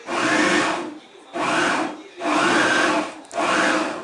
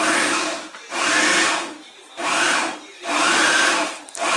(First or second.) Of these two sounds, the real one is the first